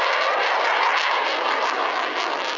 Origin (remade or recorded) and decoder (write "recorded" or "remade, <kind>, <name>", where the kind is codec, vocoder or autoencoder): recorded